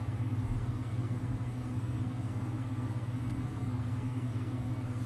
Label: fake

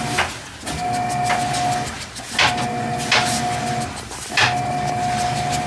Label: real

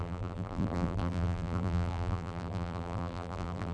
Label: fake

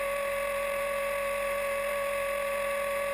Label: fake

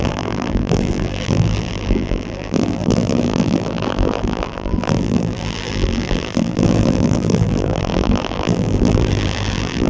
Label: fake